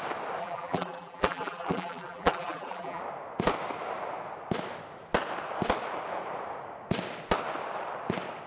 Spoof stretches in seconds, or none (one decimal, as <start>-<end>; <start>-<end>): 0.4-3.0